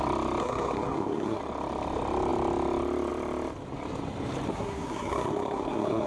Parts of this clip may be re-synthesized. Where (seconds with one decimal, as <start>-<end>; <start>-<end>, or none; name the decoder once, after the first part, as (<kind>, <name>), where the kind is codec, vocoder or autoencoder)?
0.4-1.4 (codec, SNAC); 4.5-6.1